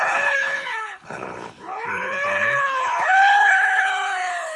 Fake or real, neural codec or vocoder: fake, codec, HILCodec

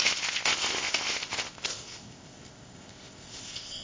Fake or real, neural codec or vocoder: fake, codec, ZipCodec